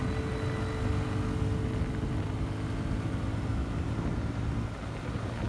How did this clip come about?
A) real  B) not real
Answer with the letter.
A